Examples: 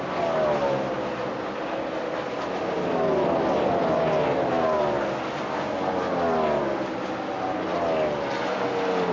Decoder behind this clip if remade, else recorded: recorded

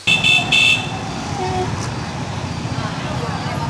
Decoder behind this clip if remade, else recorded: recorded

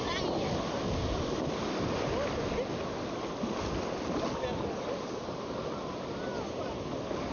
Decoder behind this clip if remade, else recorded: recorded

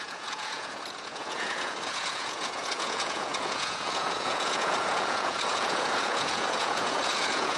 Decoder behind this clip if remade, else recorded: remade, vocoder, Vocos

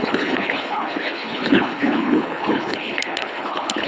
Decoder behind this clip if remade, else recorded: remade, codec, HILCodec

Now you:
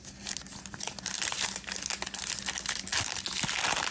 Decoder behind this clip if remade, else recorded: recorded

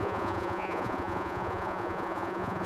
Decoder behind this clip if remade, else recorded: remade, vocoder, Vocos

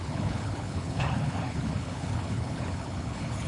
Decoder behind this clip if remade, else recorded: remade, codec, HILCodec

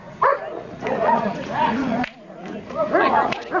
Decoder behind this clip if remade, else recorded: remade, vocoder, Vocos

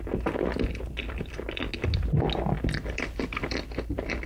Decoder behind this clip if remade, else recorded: recorded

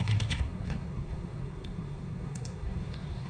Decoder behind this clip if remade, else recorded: remade, codec, SNAC